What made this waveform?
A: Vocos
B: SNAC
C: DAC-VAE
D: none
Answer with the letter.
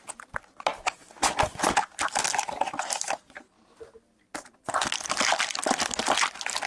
D